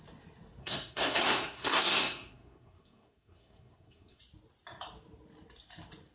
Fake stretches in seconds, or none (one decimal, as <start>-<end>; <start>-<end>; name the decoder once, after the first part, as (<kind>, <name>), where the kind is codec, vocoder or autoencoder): 0.6-4.2 (codec, SNAC)